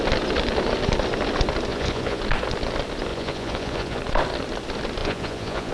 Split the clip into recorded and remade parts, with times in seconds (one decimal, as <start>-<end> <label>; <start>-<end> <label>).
0.0-1.7 recorded; 1.7-2.2 remade; 2.2-3.1 recorded; 3.1-4.0 remade; 4.0-5.0 recorded; 5.0-5.7 remade